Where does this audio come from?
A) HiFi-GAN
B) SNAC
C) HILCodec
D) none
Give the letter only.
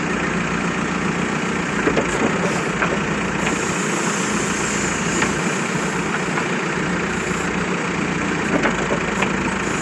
D